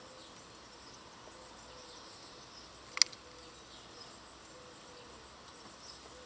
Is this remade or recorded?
recorded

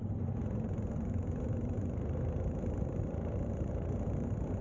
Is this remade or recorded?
remade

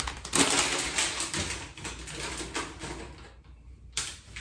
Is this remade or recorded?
recorded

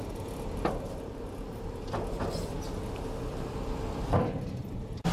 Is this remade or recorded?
remade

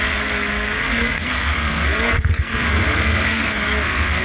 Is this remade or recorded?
remade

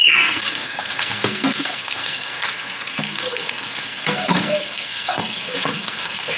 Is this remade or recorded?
remade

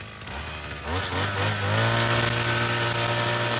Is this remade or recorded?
recorded